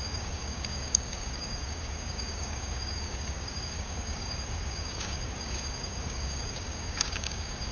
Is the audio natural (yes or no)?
no